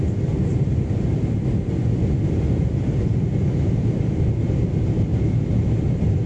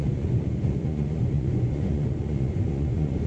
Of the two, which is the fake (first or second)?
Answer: second